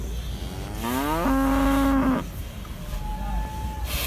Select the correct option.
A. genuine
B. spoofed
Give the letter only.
A